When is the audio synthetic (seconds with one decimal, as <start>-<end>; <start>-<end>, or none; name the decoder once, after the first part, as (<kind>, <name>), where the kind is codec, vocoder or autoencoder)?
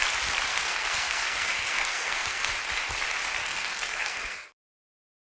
0.5-2.5 (codec, SNAC); 3.5-4.8